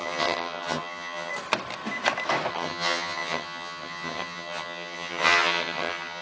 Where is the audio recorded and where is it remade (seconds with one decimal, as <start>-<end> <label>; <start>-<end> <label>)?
0.0-1.3 remade; 1.3-2.5 recorded; 2.5-6.2 remade